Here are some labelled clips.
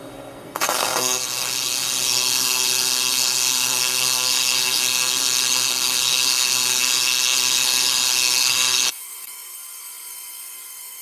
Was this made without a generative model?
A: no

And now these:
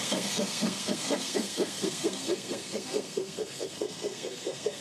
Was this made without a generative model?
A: no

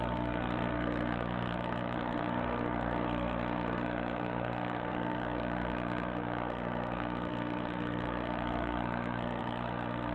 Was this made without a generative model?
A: no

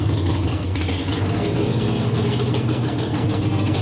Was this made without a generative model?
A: no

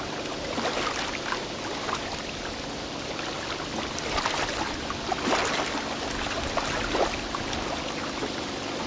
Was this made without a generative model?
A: yes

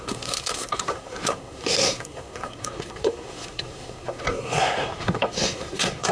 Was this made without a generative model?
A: no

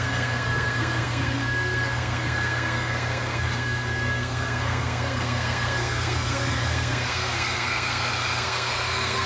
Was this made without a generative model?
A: no